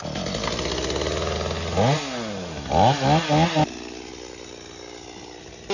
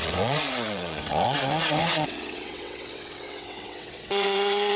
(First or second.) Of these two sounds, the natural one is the first